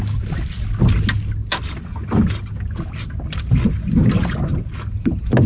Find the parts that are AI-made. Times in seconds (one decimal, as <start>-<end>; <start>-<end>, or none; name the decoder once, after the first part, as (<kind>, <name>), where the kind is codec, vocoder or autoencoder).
none